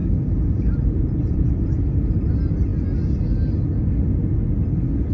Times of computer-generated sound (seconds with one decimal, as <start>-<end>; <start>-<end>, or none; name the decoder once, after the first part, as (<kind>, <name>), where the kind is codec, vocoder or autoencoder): 0.0-1.5 (vocoder, BigVGAN v2)